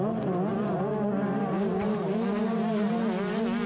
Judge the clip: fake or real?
real